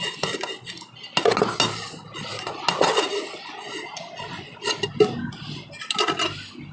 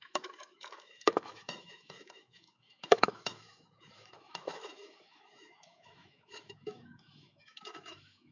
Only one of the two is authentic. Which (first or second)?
first